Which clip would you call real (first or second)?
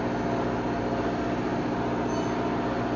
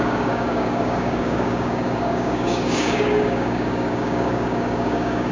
first